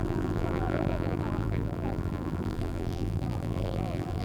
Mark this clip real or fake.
fake